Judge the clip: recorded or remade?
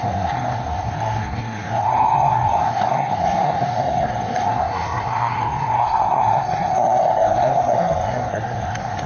remade